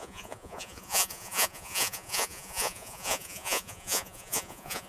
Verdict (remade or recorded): remade